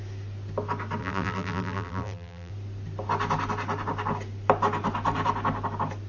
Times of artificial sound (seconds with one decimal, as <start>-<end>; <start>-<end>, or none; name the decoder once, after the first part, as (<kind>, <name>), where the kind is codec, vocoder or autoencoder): 1.0-2.5 (vocoder, BigVGAN v2)